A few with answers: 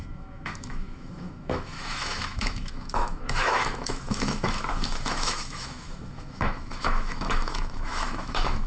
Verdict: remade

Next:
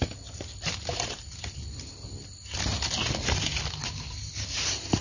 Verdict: recorded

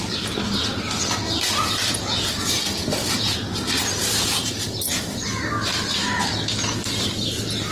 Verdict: recorded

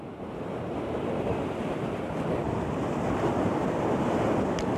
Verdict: recorded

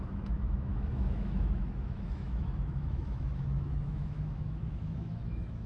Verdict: remade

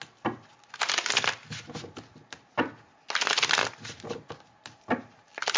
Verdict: recorded